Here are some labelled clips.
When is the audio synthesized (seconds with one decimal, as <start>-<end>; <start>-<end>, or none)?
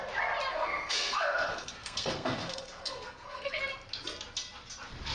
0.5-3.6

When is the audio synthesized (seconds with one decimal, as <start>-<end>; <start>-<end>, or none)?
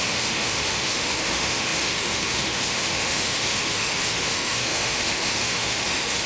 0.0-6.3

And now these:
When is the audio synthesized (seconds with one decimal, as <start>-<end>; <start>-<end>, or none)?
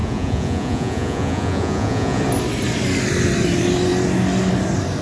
0.0-2.2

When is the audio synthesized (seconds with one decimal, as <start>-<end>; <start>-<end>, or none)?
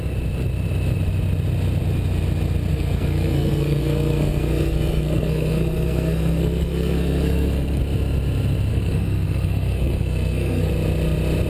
2.7-7.8; 8.7-10.7